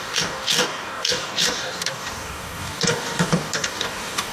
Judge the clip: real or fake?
fake